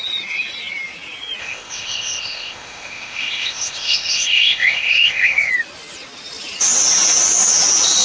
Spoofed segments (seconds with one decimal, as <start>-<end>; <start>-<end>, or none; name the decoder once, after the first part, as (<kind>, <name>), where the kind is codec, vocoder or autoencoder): 1.4-5.5 (codec, ZipCodec)